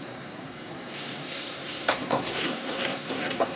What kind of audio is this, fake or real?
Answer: fake